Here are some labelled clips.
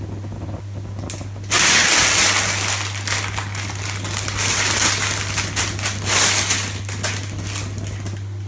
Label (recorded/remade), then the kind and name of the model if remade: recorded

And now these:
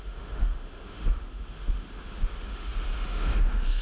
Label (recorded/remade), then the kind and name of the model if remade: remade, autoencoder, DAC-VAE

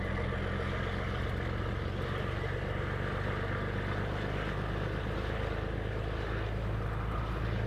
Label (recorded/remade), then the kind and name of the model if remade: recorded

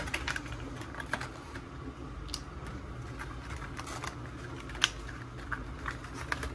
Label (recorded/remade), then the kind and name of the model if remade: recorded